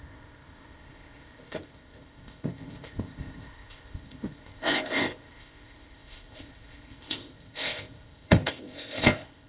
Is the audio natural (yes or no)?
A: no